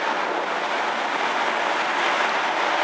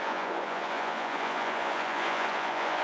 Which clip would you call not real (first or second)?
second